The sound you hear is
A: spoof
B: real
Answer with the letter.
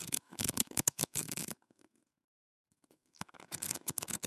A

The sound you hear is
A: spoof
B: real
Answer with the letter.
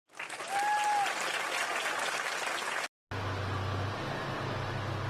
B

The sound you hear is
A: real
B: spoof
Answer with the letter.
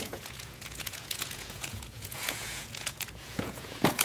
B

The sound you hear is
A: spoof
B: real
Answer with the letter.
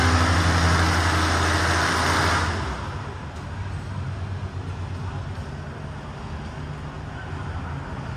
B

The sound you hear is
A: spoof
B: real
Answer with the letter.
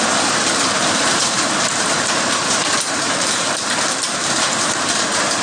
A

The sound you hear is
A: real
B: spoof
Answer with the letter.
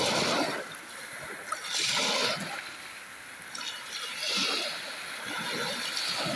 A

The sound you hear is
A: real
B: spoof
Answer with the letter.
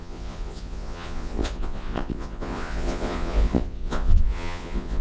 B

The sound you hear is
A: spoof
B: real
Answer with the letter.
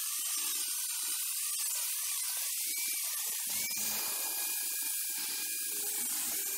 A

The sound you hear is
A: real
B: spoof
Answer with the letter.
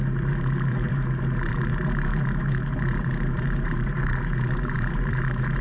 B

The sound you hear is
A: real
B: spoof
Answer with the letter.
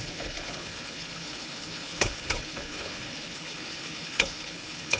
B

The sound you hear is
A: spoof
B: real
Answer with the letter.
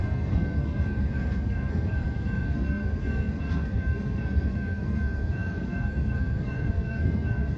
A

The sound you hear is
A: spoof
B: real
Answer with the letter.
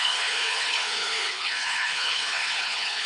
A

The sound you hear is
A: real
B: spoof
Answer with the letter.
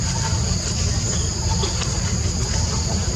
A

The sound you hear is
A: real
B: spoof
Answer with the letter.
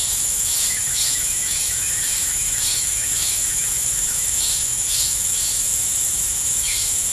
B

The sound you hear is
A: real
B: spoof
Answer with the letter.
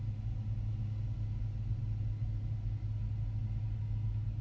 A